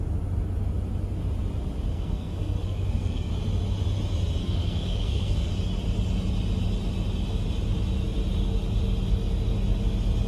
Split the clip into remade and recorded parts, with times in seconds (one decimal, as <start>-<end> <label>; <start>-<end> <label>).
0.0-1.9 recorded; 1.9-3.3 remade; 3.3-4.4 recorded; 4.4-5.5 remade; 5.5-10.3 recorded